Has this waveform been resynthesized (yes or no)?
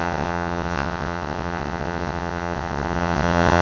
yes